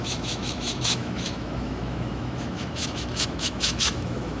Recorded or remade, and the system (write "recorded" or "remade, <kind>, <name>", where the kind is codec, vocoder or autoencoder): remade, autoencoder, DAC-VAE